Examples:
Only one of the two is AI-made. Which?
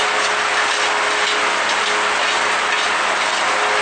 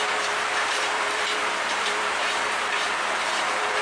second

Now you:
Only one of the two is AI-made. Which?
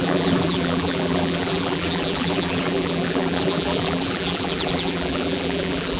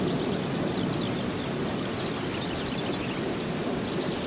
first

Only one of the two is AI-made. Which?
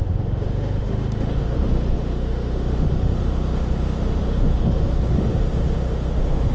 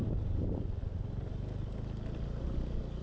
first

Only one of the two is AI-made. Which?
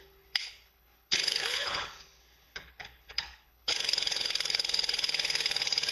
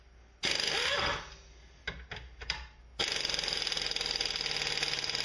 first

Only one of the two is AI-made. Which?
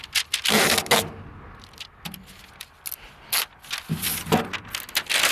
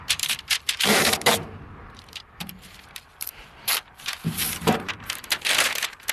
second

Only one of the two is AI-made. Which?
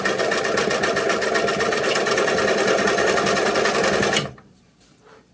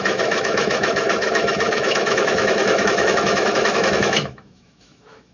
second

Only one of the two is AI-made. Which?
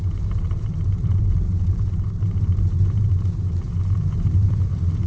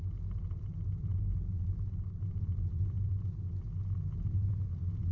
first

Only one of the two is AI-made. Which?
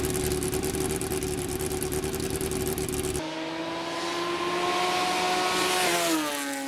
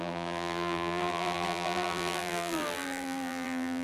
second